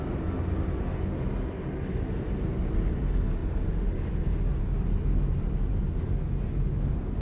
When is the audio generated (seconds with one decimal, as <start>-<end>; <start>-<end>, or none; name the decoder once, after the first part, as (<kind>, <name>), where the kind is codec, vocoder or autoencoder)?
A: none